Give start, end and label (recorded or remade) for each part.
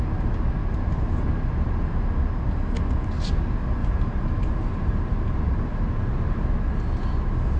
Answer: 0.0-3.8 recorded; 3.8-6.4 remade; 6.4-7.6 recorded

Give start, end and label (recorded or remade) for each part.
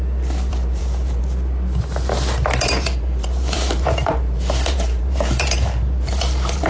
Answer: 0.0-0.5 recorded; 0.5-1.2 remade; 1.2-2.6 recorded; 2.6-6.7 remade